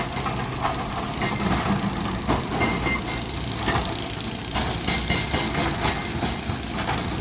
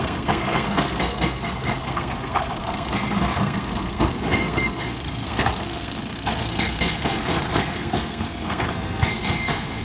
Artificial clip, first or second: second